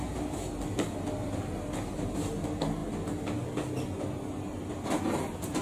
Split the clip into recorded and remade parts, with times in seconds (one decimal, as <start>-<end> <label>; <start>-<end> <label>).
0.0-5.6 recorded